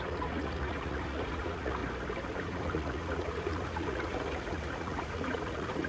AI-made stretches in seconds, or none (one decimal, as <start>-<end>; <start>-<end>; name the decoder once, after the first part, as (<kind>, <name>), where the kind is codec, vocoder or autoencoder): 0.0-1.8 (vocoder, Vocos); 2.4-5.9